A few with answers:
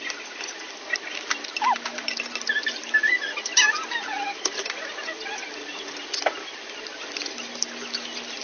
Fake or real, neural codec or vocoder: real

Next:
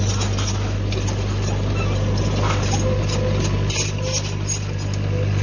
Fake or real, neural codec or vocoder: real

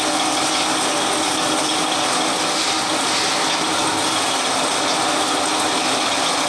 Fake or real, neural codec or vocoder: real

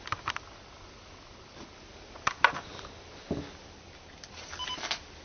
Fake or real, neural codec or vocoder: real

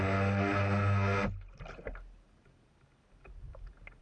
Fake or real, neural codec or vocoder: real